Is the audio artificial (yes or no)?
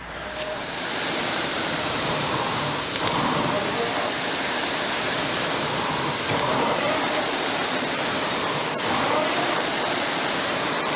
yes